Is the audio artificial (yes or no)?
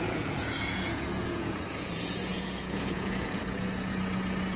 yes